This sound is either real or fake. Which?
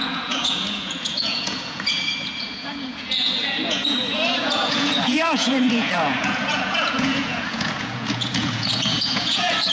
fake